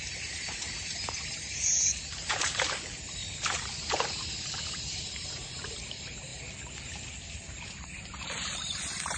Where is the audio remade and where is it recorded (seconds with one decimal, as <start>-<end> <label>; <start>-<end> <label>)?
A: 0.0-6.3 remade; 6.3-7.4 recorded; 7.4-9.2 remade